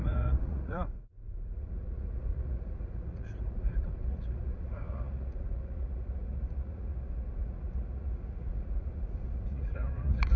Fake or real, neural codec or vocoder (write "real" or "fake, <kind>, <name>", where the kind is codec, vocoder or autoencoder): fake, vocoder, Vocos